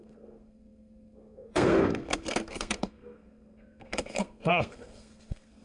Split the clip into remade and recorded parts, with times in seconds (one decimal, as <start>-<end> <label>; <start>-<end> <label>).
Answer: 0.0-5.6 remade